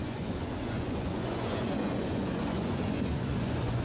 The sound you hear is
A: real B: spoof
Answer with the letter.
B